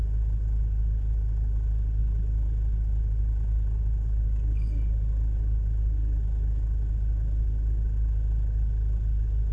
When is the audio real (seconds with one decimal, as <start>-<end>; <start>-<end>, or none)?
0.0-9.5